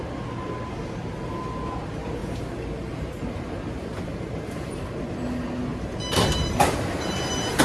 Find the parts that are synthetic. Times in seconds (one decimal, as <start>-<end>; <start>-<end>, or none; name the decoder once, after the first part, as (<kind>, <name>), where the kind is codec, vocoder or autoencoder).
2.2-5.0 (vocoder, BigVGAN v2); 5.7-7.6

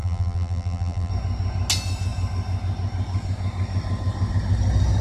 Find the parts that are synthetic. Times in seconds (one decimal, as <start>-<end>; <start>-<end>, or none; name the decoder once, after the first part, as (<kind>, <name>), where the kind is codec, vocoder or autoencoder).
0.0-1.1 (vocoder, BigVGAN v2)

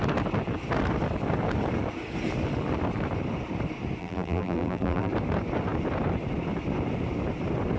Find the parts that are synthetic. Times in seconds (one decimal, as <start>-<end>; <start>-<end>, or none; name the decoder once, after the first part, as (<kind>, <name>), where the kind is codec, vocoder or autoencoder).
4.0-5.1 (vocoder, BigVGAN v2)

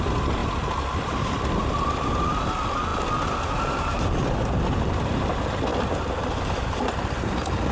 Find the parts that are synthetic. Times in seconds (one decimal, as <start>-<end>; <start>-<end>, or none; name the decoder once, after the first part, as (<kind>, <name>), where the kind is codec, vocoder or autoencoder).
none

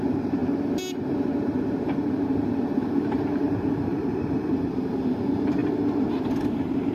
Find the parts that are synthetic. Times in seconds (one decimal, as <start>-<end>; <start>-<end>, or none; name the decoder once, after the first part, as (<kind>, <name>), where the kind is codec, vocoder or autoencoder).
0.0-5.6 (vocoder, BigVGAN v2); 6.2-6.9

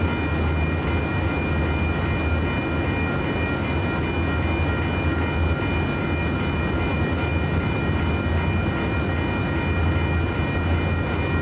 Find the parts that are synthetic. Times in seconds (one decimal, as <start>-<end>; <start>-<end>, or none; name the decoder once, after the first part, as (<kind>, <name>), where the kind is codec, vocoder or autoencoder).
none

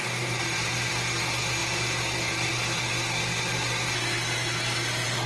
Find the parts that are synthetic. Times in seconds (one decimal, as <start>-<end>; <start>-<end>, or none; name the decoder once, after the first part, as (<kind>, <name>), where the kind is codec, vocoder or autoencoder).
0.0-0.9 (vocoder, BigVGAN v2)

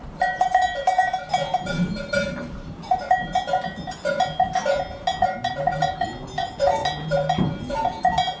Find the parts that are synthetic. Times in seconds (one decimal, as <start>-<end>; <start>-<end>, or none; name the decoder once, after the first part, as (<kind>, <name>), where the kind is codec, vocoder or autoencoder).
none